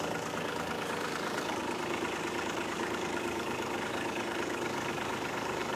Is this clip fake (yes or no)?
yes